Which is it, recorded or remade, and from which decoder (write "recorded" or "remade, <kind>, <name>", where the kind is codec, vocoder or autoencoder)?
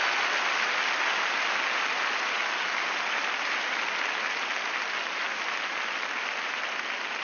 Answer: recorded